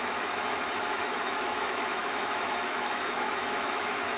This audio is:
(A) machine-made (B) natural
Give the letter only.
A